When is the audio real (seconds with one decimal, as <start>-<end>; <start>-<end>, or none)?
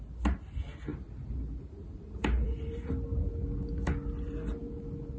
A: 0.0-0.9; 2.9-5.2